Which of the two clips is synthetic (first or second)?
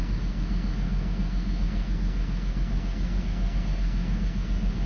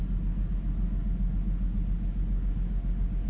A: first